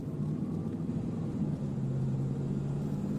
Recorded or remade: recorded